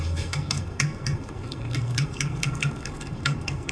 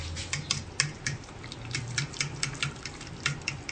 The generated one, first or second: first